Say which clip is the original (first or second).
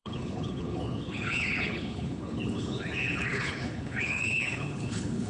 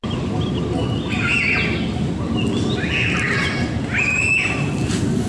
second